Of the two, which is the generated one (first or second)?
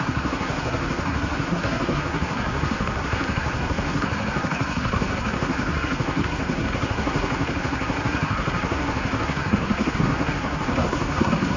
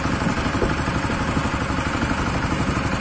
first